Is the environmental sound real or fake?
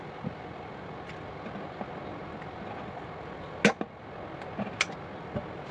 real